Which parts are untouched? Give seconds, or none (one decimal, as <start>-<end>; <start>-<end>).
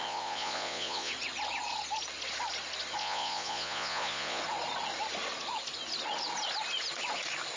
1.1-3.0; 4.4-7.6